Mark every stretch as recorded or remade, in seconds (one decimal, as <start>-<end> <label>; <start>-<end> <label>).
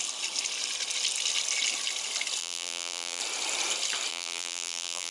0.0-2.4 recorded; 2.4-3.2 remade; 3.2-4.1 recorded; 4.1-5.1 remade